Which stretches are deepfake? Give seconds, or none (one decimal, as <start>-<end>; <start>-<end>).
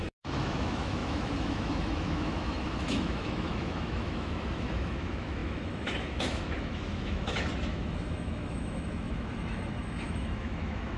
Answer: 0.0-11.0